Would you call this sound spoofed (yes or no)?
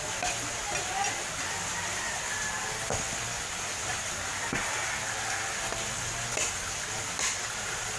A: no